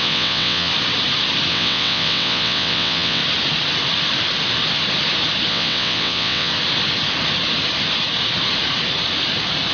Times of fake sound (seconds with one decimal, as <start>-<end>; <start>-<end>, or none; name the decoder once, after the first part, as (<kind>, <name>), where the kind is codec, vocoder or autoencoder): 0.0-0.7 (vocoder, WaveNeXt); 1.5-3.2; 5.5-6.5